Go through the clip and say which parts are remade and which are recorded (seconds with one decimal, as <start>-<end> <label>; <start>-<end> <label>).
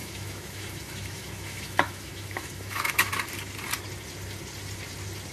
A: 0.0-3.1 remade; 3.1-5.3 recorded